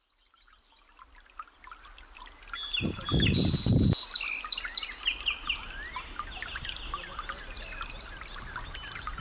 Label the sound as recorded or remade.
recorded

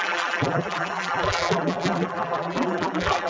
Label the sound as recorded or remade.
remade